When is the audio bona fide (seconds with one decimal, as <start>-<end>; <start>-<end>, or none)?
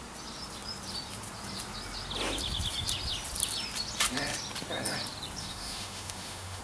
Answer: 0.0-5.4